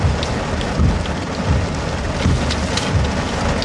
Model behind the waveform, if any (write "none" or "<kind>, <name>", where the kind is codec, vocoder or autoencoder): none